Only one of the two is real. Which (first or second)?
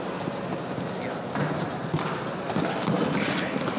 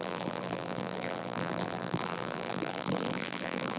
first